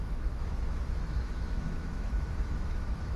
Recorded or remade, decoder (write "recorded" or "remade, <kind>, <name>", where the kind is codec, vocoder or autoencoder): remade, autoencoder, DAC-VAE